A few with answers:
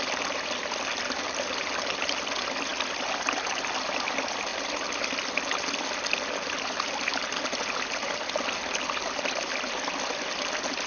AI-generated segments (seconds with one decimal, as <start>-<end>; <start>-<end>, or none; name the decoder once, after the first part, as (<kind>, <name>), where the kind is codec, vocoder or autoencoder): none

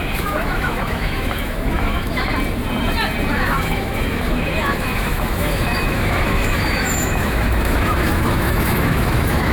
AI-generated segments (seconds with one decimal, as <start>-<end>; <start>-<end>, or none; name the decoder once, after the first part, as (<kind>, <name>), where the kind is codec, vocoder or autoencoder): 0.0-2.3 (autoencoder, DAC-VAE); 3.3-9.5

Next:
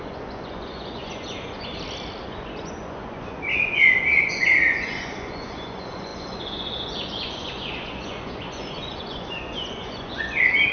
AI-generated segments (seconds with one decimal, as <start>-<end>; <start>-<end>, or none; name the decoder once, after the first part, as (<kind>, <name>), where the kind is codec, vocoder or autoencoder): 0.0-1.7 (vocoder, Vocos); 2.2-10.7